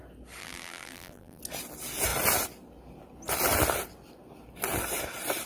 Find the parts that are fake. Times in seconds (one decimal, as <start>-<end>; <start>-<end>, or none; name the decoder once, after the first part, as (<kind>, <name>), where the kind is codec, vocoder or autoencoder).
0.4-1.4 (vocoder, BigVGAN v2)